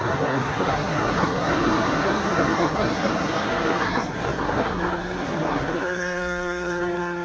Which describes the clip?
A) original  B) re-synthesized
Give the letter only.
B